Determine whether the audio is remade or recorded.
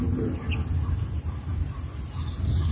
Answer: recorded